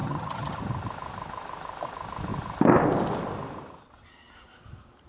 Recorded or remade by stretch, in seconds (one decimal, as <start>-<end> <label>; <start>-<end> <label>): 0.0-0.6 remade; 0.6-5.1 recorded